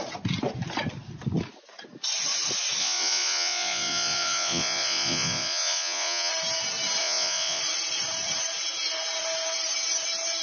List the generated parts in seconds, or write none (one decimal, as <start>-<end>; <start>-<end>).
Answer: 2.8-6.3; 7.0-7.6